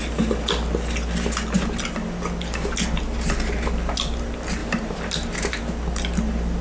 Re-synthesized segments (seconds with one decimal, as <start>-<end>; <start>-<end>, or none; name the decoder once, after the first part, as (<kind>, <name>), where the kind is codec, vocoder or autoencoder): 4.6-5.6 (vocoder, BigVGAN v2)